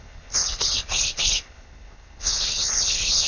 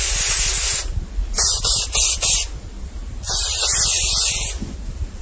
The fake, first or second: first